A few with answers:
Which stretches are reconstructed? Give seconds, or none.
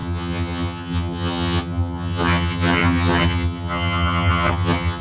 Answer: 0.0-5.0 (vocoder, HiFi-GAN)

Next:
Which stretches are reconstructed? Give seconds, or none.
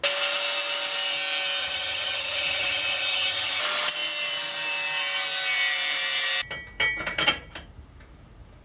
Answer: 1.6-3.6 (vocoder, HiFi-GAN)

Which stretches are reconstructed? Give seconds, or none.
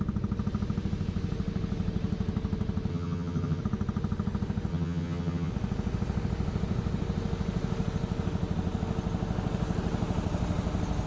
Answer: 2.9-3.6 (vocoder, HiFi-GAN); 4.7-5.5